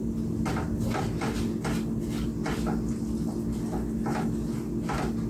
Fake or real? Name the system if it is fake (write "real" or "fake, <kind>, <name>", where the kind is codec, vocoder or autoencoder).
real